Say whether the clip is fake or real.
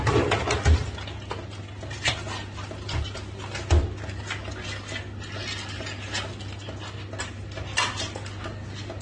real